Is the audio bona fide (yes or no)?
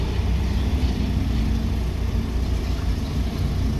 yes